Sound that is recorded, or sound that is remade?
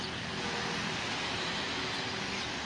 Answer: recorded